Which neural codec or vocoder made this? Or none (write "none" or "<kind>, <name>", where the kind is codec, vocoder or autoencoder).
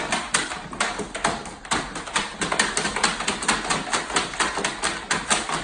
none